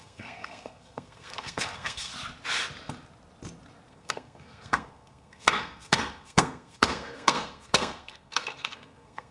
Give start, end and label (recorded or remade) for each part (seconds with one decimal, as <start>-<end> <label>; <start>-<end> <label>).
0.0-2.1 remade; 2.1-3.9 recorded; 3.9-9.3 remade